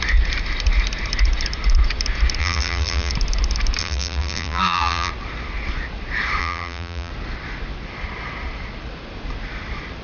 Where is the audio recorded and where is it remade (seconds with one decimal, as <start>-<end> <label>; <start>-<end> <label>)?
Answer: 0.0-2.4 recorded; 2.4-3.1 remade; 3.1-3.8 recorded; 3.8-5.1 remade; 5.1-6.4 recorded; 6.4-7.1 remade; 7.1-10.0 recorded